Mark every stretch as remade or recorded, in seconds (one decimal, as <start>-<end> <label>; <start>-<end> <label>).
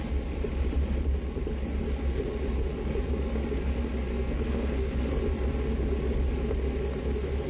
0.0-4.1 recorded; 4.1-5.1 remade; 5.1-7.5 recorded